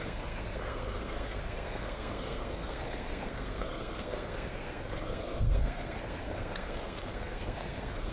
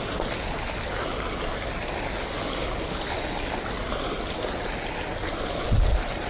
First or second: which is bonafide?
second